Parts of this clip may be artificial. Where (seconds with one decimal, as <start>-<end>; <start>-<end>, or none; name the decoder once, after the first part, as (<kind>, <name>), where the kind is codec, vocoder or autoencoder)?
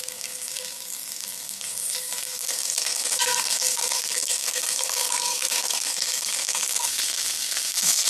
0.0-8.1 (codec, SNAC)